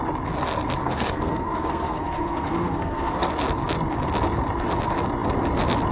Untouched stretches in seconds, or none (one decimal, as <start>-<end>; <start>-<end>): 0.0-0.8; 3.3-5.9